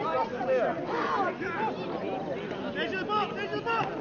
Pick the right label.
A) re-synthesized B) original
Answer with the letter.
B